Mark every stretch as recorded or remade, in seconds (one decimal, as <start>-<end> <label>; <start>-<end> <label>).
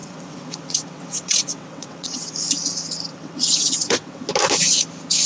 0.0-2.3 remade; 2.3-3.1 recorded; 3.1-4.3 remade; 4.3-5.3 recorded